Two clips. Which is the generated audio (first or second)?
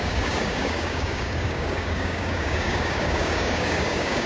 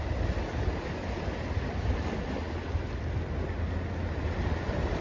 first